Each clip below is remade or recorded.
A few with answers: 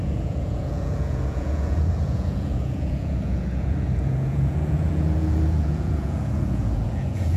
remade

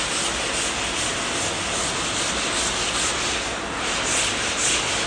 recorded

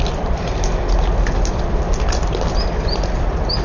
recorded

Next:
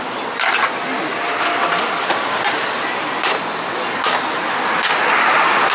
recorded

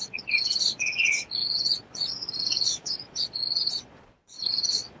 remade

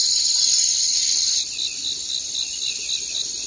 recorded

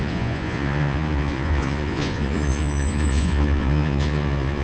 remade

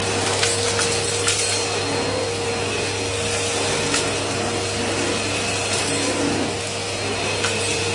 recorded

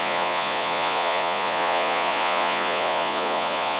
remade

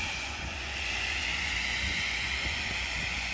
remade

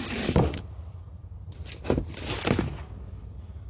recorded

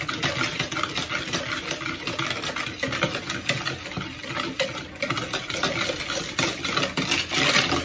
recorded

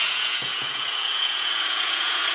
remade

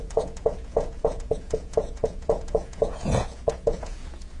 remade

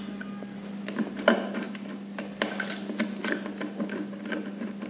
recorded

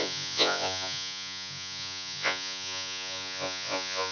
remade